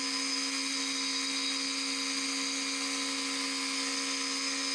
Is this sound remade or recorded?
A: recorded